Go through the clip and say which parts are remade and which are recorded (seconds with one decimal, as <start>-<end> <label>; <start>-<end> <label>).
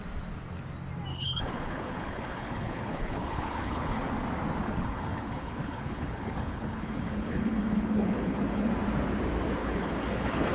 0.0-1.1 recorded; 1.1-4.1 remade; 4.1-4.6 recorded; 4.6-8.7 remade; 8.7-9.6 recorded; 9.6-10.5 remade